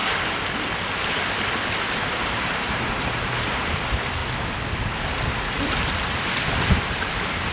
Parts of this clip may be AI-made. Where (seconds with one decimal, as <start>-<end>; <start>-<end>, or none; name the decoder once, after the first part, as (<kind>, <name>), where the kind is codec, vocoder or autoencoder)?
2.4-4.2 (vocoder, BigVGAN v2); 6.8-7.5